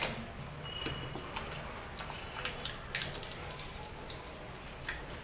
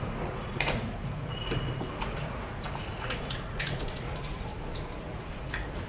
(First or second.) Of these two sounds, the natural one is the first